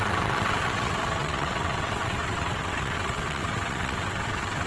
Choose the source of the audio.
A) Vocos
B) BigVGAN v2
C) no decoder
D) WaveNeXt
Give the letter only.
D